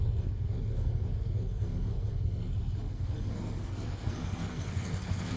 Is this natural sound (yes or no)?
no